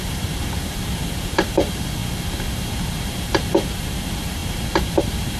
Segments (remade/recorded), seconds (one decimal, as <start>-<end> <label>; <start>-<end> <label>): 0.0-2.0 remade; 2.0-2.5 recorded; 2.5-5.4 remade